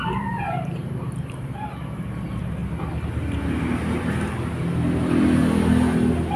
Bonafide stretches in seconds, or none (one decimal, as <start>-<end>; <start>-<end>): 2.6-4.6; 5.4-6.4